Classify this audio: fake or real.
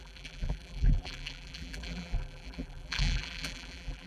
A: fake